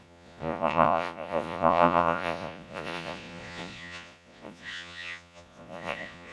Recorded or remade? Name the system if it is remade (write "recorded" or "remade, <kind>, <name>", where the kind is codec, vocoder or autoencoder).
remade, vocoder, Vocos